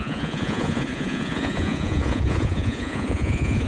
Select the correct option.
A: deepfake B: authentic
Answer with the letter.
A